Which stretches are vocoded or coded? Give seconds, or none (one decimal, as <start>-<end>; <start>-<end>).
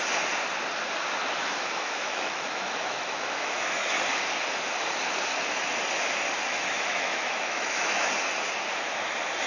1.4-4.0; 6.5-8.1